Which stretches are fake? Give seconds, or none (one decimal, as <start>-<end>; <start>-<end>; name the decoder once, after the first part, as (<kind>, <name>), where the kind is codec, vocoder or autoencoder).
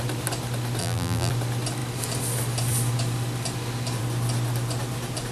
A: 0.8-1.3 (vocoder, BigVGAN v2)